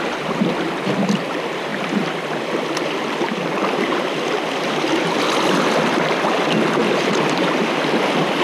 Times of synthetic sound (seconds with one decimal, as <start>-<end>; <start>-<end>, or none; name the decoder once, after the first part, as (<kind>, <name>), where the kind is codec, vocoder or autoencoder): 1.7-4.2 (vocoder, BigVGAN v2); 6.8-7.8